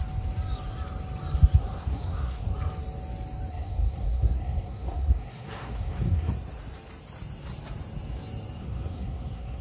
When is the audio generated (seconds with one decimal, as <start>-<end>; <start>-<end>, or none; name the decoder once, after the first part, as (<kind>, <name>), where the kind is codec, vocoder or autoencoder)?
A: 1.6-2.5 (codec, SNAC); 3.5-6.3; 8.6-9.6